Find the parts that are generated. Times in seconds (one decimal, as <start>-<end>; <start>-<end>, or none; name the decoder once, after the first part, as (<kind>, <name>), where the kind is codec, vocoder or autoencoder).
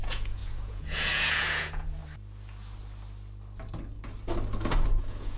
0.0-2.0 (vocoder, Vocos); 5.0-5.4